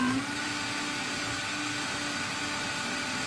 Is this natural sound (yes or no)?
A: yes